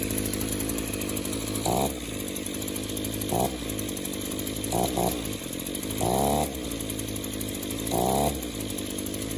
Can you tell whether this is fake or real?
real